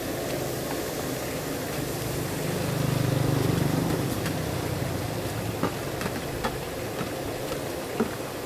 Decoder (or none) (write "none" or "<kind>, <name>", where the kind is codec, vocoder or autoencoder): none